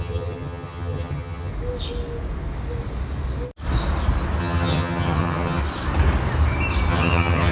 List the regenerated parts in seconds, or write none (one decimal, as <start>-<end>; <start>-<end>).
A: 0.0-1.5; 4.4-5.6; 6.9-7.5